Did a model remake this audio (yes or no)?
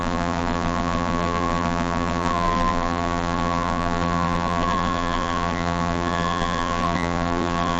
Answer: yes